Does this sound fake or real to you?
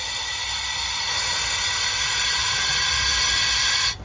real